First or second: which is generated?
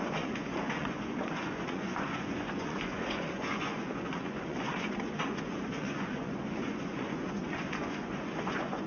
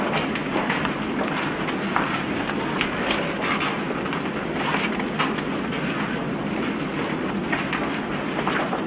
first